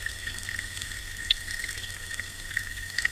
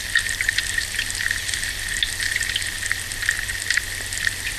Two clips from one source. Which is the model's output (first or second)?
first